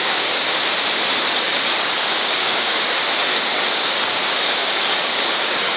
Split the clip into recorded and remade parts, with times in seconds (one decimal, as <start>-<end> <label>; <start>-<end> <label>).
0.0-0.6 remade; 0.6-1.3 recorded; 1.3-5.8 remade